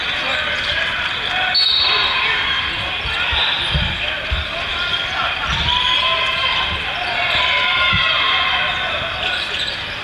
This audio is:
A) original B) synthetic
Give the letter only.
A